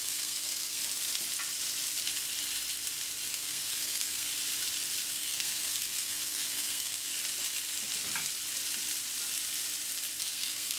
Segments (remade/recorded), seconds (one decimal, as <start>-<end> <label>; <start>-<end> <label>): 0.0-0.8 remade; 0.8-3.3 recorded; 3.3-4.3 remade; 4.3-5.1 recorded; 5.1-7.1 remade; 7.1-10.2 recorded; 10.2-10.8 remade